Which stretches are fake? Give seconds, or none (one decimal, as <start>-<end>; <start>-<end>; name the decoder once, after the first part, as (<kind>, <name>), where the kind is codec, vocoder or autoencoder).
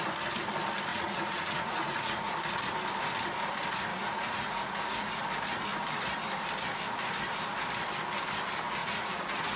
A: 0.9-2.3 (vocoder, Vocos); 3.9-5.2; 8.8-9.6